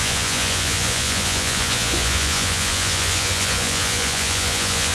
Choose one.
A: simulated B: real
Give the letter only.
A